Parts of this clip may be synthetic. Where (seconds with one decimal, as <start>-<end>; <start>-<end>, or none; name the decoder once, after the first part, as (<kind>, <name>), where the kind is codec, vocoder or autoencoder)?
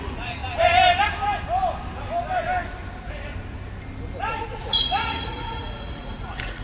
0.0-0.4 (vocoder, Vocos); 4.4-6.6